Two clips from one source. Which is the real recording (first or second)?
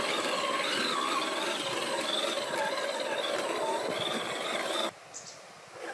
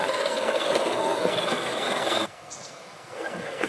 first